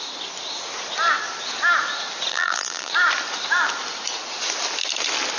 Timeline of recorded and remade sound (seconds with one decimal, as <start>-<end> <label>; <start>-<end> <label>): 0.0-2.3 recorded; 2.3-2.9 remade; 2.9-5.4 recorded

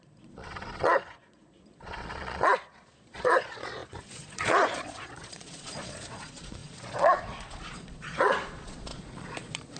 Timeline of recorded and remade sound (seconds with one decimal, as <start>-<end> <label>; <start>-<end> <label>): 0.0-9.8 remade

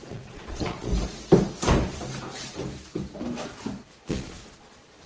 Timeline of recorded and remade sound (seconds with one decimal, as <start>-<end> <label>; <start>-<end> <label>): 0.0-0.9 remade; 0.9-4.0 recorded; 4.0-5.1 remade